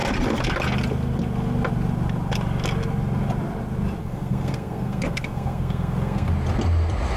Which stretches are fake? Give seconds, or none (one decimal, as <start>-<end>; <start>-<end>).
4.0-6.3